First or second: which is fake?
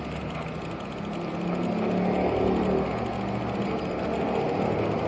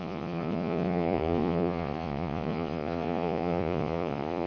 second